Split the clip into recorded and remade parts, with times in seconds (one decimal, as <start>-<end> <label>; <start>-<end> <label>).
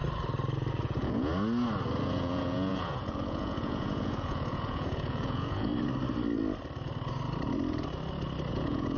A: 0.0-0.7 recorded; 0.7-1.3 remade; 1.3-2.0 recorded; 2.0-5.7 remade; 5.7-8.5 recorded; 8.5-9.0 remade